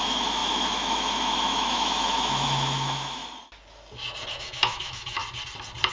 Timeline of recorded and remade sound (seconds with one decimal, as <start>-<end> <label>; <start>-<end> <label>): 0.0-3.2 remade; 3.2-4.3 recorded; 4.3-5.2 remade; 5.2-5.9 recorded